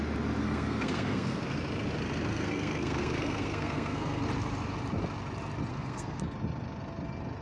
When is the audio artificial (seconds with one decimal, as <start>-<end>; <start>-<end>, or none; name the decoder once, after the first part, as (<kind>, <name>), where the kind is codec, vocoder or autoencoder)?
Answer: 0.4-1.4 (codec, SNAC); 2.3-4.2; 5.7-6.2